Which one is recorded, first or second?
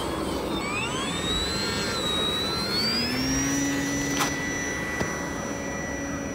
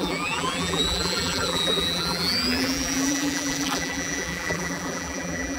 first